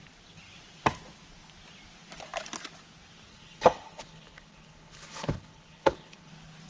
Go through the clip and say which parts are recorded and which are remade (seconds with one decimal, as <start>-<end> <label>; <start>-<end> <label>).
0.0-3.3 recorded; 3.3-6.3 remade; 6.3-6.7 recorded